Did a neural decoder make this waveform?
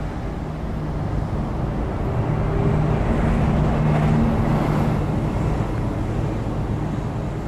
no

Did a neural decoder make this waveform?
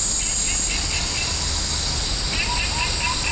no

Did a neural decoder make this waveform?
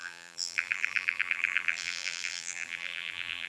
yes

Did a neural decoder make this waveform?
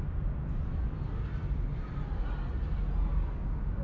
no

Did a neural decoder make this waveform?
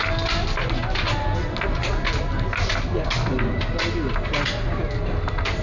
no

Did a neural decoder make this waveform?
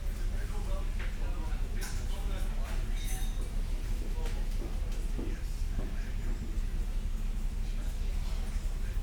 yes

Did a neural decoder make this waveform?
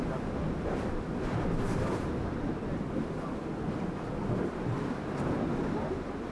no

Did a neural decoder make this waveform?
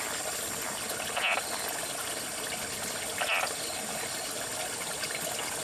no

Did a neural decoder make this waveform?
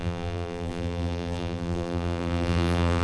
yes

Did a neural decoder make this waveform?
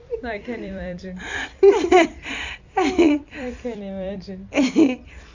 yes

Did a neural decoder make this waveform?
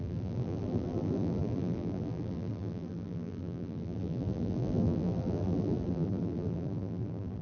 yes